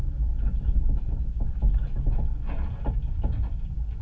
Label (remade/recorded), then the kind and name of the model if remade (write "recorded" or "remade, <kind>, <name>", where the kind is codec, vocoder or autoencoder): recorded